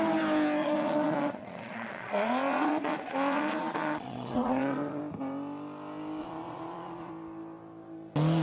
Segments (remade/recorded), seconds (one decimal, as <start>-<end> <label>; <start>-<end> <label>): 0.0-0.6 recorded; 0.6-5.0 remade; 5.0-6.2 recorded; 6.2-7.1 remade; 7.1-8.4 recorded

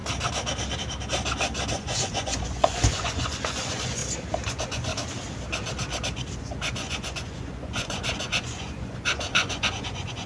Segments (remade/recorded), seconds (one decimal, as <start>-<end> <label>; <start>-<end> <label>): 0.0-1.7 recorded; 1.7-4.0 remade; 4.0-4.5 recorded; 4.5-4.9 remade; 4.9-6.4 recorded; 6.4-10.3 remade

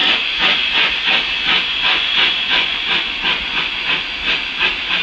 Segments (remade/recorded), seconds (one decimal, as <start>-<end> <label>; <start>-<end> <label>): 0.0-0.9 remade; 0.9-1.7 recorded; 1.7-3.9 remade; 3.9-5.0 recorded

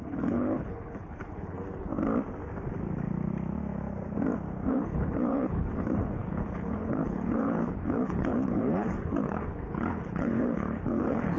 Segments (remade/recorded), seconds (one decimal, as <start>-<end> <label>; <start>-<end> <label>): 0.0-1.9 remade; 1.9-4.7 recorded; 4.7-11.4 remade